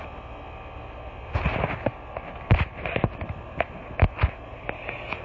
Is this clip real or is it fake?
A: real